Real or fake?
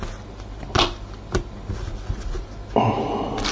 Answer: real